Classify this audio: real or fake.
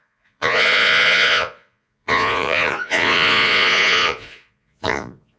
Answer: fake